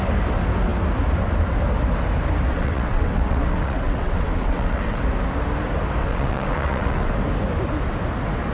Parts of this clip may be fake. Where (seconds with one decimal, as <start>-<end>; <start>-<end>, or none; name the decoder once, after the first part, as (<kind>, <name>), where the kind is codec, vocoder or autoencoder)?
2.5-5.0 (vocoder, WaveNeXt); 6.1-7.1